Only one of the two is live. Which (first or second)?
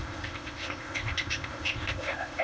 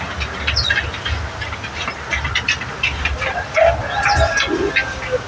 second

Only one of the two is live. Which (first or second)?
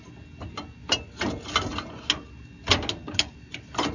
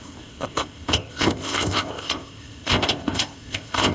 first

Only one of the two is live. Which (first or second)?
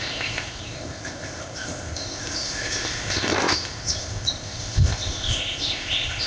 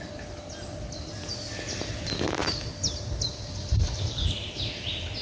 second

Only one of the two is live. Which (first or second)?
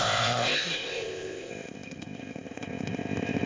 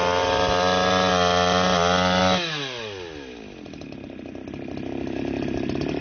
second